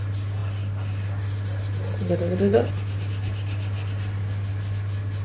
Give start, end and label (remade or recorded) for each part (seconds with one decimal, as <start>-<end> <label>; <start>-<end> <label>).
0.0-5.2 recorded